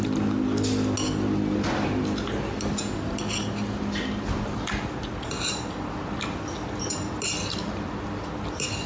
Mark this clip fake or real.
real